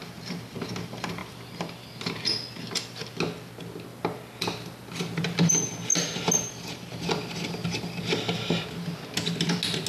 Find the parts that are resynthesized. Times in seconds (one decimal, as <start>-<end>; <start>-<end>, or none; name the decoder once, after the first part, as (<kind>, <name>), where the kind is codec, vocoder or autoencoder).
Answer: 1.2-1.8 (vocoder, BigVGAN v2); 3.9-5.0; 5.9-8.2